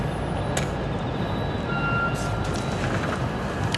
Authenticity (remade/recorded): recorded